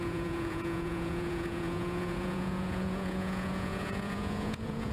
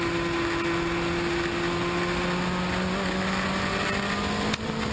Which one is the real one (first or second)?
second